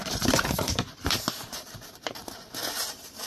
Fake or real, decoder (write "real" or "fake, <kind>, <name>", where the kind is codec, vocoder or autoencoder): fake, vocoder, BigVGAN v2